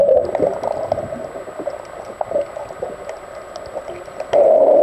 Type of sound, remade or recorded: recorded